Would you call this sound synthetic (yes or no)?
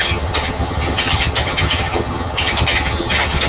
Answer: yes